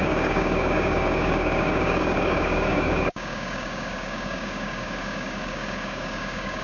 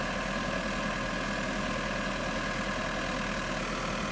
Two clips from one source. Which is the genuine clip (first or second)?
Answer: second